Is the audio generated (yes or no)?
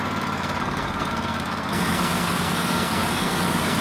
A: yes